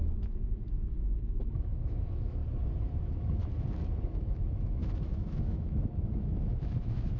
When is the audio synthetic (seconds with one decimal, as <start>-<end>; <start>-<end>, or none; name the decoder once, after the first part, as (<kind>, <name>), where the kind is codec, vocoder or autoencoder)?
0.0-2.4 (autoencoder, DAC-VAE); 3.0-3.4; 4.0-7.2